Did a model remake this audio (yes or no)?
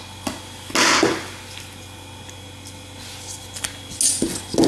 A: no